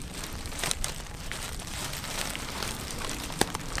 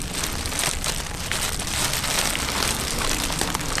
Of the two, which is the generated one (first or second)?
first